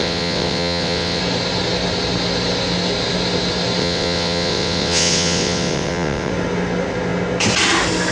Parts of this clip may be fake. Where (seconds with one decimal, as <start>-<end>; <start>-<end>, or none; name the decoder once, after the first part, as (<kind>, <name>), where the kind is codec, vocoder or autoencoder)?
0.0-1.2 (vocoder, WaveNeXt); 3.8-6.3